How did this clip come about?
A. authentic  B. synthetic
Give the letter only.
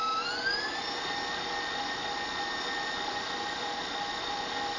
A